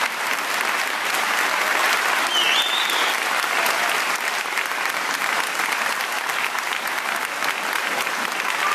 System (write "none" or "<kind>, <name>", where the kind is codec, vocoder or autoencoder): none